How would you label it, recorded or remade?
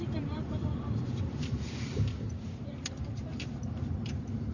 remade